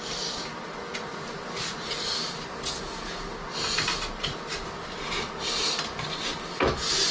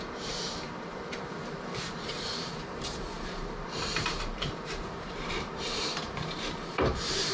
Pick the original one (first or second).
first